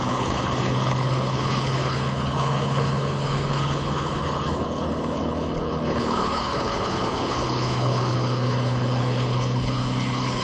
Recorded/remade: remade